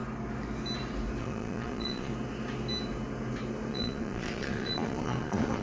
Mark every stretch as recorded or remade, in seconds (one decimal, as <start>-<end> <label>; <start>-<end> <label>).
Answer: 0.0-1.2 recorded; 1.2-2.1 remade; 2.1-3.7 recorded; 3.7-5.6 remade